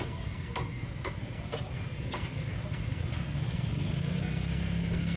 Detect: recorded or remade remade